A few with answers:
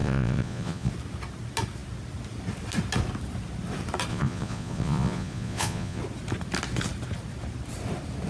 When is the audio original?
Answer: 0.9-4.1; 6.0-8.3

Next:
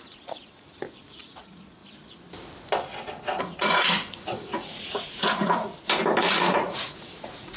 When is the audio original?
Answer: 1.8-3.4; 5.7-6.2

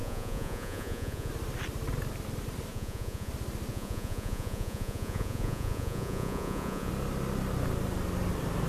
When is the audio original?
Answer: 1.3-2.7; 3.3-3.7; 6.9-8.7